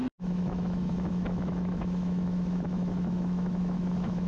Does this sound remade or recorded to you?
remade